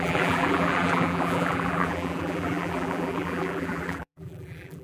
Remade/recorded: remade